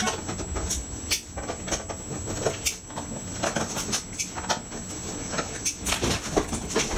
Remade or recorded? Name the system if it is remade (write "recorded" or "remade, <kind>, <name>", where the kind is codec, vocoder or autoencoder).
recorded